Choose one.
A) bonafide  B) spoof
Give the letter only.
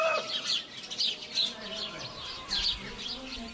A